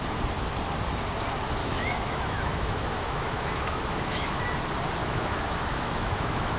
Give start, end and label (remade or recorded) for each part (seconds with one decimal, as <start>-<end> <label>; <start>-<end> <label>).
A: 0.0-1.6 recorded; 1.6-4.4 remade; 4.4-5.0 recorded; 5.0-6.6 remade